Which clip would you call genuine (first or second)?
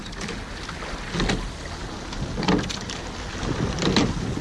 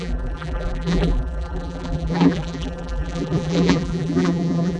first